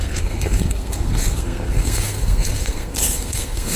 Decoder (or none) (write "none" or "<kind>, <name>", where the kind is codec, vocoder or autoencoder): codec, SNAC